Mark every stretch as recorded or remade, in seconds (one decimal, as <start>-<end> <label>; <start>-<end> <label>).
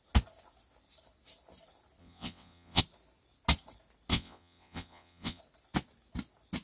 0.0-2.0 recorded; 2.0-2.8 remade; 2.8-4.1 recorded; 4.1-5.4 remade; 5.4-6.6 recorded